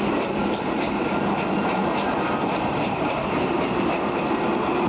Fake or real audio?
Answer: real